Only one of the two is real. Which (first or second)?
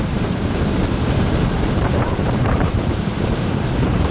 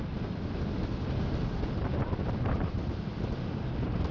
second